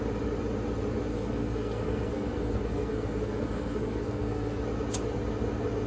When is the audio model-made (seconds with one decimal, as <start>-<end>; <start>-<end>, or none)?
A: 1.1-4.6